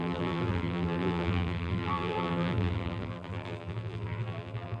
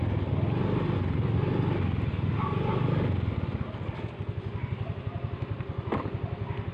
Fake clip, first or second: first